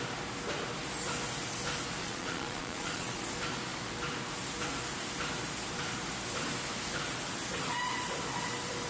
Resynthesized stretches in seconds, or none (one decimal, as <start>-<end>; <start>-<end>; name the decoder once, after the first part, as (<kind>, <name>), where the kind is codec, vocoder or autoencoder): 2.0-3.2 (vocoder, Vocos)